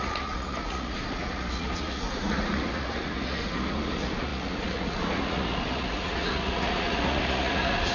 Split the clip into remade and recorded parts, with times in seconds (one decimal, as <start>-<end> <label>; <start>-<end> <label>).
0.0-7.9 remade